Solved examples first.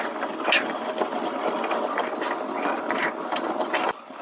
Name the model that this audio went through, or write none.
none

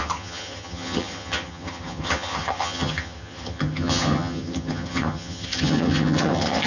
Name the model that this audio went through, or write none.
vocoder, HiFi-GAN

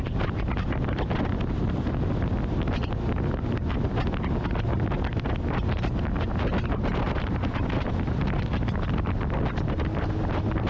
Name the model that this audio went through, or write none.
none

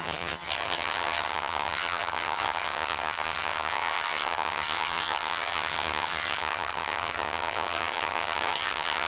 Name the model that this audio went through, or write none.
vocoder, HiFi-GAN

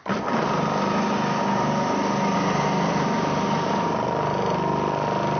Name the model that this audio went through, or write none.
none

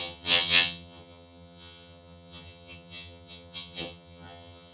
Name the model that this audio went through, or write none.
vocoder, HiFi-GAN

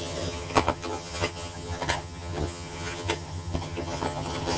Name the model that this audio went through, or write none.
vocoder, HiFi-GAN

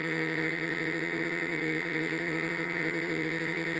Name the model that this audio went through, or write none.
vocoder, HiFi-GAN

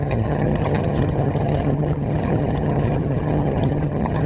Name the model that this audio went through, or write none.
vocoder, HiFi-GAN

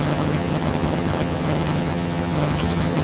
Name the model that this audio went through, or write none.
vocoder, HiFi-GAN